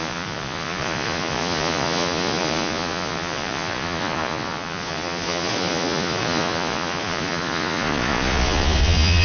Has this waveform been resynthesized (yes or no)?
yes